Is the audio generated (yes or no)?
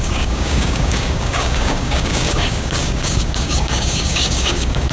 yes